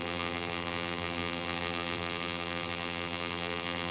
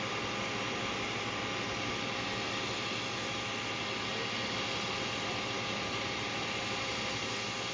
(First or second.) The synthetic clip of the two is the first